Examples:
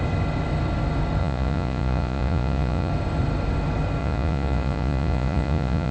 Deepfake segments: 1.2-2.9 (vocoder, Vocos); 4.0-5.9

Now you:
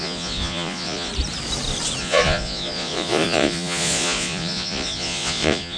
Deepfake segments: 0.0-1.1 (vocoder, Vocos); 2.0-5.8

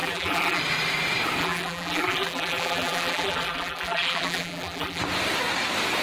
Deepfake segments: 0.0-0.6 (vocoder, BigVGAN v2); 1.4-5.0